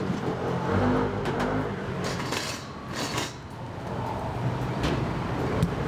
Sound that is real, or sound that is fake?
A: real